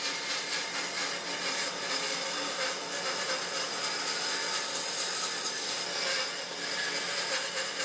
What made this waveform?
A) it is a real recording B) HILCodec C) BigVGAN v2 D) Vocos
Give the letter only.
A